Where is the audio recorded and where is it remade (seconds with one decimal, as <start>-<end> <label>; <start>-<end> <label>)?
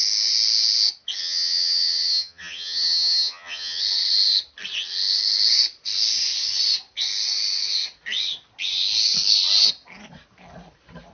0.0-1.2 recorded; 1.2-3.8 remade; 3.8-11.1 recorded